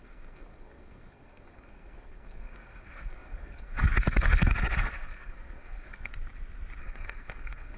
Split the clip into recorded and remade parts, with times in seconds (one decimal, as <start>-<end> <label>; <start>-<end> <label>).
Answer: 0.0-6.1 remade; 6.1-6.8 recorded; 6.8-7.8 remade